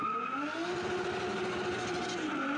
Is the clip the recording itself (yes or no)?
yes